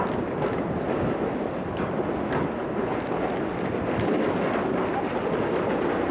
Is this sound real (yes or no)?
yes